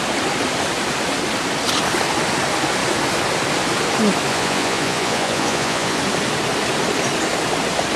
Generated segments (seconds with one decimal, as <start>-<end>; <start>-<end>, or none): 4.3-6.0